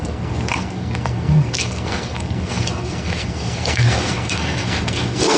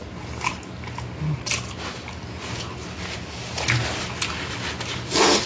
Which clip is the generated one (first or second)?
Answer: first